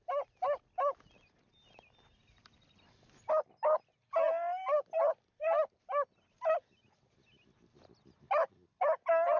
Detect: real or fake real